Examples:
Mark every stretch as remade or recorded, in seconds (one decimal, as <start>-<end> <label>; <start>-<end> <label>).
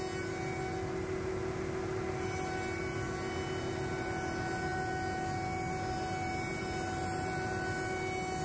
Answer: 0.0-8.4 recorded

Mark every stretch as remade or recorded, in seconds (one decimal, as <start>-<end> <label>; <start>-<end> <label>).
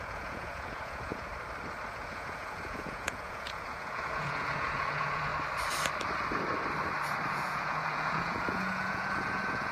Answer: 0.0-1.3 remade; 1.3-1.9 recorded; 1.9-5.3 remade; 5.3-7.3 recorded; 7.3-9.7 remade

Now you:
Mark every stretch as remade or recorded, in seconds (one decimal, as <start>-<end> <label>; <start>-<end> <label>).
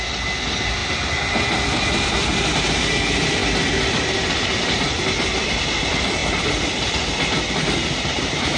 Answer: 0.0-8.6 recorded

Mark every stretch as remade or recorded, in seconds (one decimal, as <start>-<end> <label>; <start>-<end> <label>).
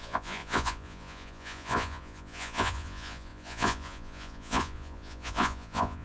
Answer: 0.0-6.0 remade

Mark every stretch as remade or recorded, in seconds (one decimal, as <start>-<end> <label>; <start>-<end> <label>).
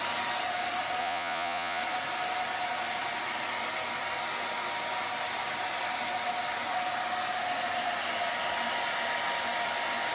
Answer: 0.0-1.0 recorded; 1.0-1.8 remade; 1.8-10.1 recorded